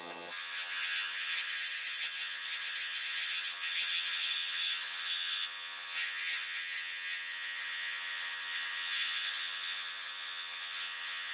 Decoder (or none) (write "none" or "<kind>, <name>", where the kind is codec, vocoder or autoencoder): vocoder, HiFi-GAN